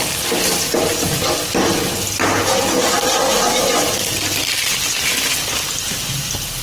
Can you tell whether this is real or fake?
real